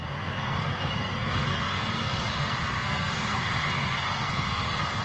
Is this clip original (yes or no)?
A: no